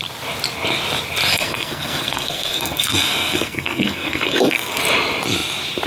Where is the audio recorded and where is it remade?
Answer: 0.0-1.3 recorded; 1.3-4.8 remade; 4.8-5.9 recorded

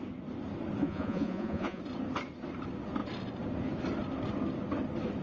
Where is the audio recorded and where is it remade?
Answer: 0.0-0.8 recorded; 0.8-1.8 remade; 1.8-5.2 recorded

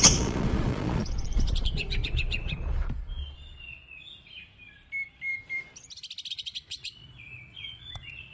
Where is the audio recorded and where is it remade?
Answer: 0.0-3.8 remade; 3.8-6.3 recorded; 6.3-8.3 remade

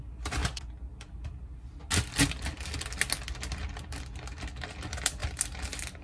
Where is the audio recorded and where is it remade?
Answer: 0.0-6.0 recorded